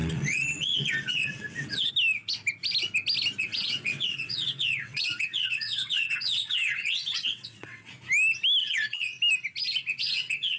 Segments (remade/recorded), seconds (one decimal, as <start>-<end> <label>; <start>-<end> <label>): 0.0-1.9 remade; 1.9-3.4 recorded; 3.4-7.9 remade; 7.9-8.6 recorded; 8.6-9.2 remade; 9.2-10.0 recorded; 10.0-10.6 remade